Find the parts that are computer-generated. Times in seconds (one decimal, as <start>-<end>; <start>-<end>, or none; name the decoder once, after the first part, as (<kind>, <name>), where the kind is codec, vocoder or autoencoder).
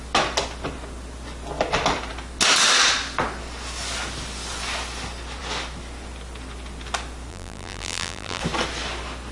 7.3-8.4 (vocoder, BigVGAN v2)